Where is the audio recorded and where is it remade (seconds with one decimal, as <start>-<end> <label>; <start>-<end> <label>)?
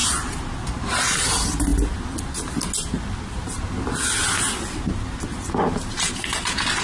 0.0-6.8 recorded